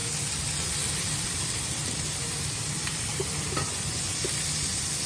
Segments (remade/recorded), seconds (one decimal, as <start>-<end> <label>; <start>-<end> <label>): 0.0-3.6 recorded; 3.6-4.2 remade; 4.2-5.1 recorded